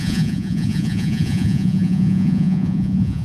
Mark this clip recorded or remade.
remade